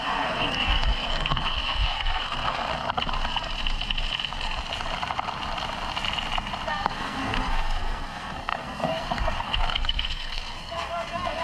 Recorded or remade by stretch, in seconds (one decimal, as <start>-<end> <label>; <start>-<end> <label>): 0.0-2.7 remade; 2.7-6.7 recorded; 6.7-11.4 remade